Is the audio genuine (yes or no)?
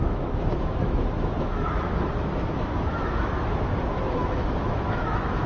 no